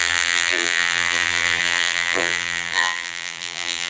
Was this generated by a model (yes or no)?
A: yes